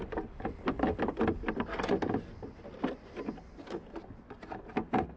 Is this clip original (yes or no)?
yes